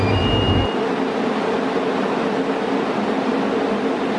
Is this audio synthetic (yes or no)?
no